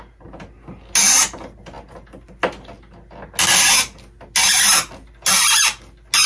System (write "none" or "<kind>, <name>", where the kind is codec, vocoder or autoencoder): none